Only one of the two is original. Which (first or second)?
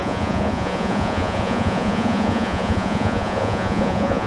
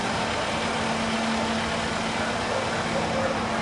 second